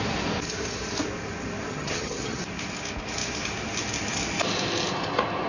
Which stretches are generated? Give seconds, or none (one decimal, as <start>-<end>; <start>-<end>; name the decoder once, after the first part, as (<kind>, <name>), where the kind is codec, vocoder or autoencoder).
1.7-2.4 (vocoder, HiFi-GAN)